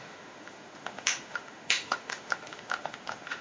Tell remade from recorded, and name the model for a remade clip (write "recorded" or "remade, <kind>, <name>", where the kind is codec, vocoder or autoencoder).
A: remade, autoencoder, DAC-VAE